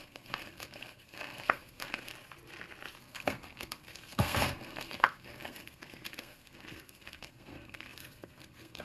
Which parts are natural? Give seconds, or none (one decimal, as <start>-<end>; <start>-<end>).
2.1-3.0